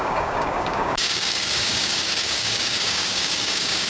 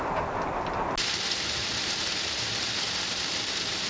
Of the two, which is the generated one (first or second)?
first